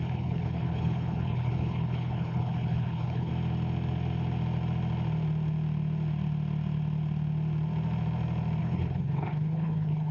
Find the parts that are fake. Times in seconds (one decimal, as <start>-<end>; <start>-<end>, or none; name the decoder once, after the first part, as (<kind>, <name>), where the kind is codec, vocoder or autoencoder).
0.0-3.3 (codec, HILCodec); 8.6-10.1